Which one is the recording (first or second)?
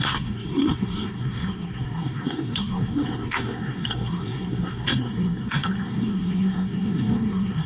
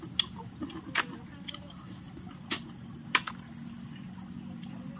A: second